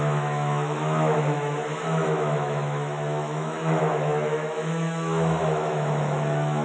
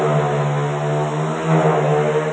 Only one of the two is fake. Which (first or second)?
first